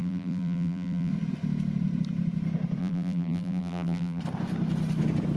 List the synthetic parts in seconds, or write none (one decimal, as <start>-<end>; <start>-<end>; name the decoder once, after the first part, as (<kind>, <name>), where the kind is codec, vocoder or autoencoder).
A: 0.0-1.1 (vocoder, BigVGAN v2); 2.8-4.2